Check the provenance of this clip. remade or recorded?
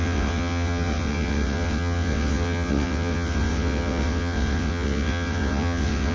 remade